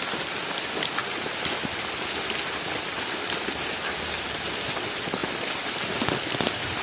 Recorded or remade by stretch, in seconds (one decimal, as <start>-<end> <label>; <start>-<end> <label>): 0.0-1.0 recorded; 1.0-2.4 remade; 2.4-5.2 recorded; 5.2-6.8 remade